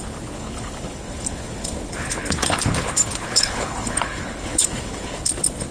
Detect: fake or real fake